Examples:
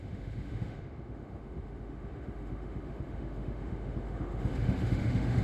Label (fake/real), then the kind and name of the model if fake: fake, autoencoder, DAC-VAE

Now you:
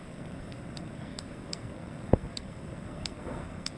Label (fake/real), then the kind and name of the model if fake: fake, codec, SNAC